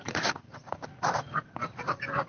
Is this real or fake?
fake